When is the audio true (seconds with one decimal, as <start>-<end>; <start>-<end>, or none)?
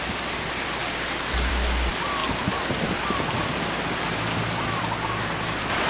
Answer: 0.0-5.9